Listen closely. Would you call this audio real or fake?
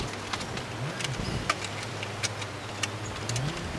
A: real